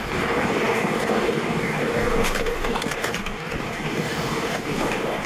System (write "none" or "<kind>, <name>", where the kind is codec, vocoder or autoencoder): codec, DAC